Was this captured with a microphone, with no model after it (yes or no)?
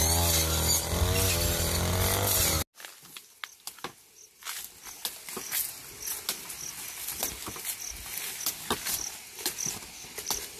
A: yes